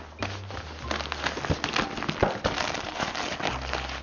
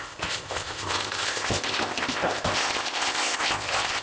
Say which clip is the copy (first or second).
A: second